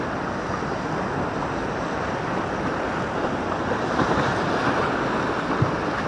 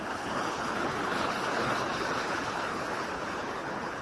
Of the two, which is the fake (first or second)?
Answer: second